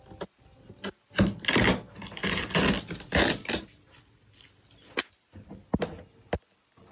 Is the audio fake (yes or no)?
no